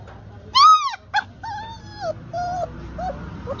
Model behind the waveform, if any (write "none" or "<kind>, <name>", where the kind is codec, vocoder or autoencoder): none